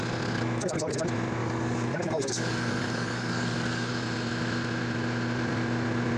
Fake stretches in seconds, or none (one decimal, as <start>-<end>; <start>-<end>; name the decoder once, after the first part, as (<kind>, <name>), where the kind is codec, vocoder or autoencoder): 1.4-3.9 (codec, DAC)